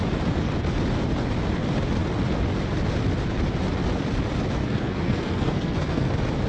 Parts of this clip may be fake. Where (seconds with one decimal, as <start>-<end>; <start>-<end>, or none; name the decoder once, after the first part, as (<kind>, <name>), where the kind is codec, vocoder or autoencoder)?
4.6-6.1 (codec, SNAC)